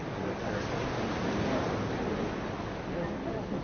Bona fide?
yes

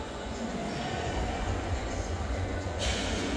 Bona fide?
no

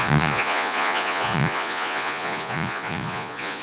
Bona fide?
no